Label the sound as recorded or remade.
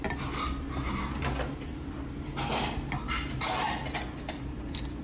recorded